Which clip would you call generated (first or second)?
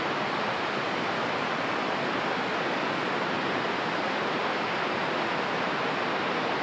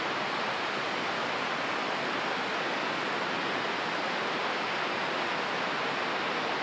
first